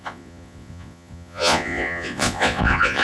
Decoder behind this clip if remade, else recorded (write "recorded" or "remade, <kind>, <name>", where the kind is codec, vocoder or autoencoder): remade, vocoder, Vocos